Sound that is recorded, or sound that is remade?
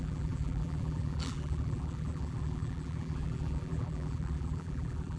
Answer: remade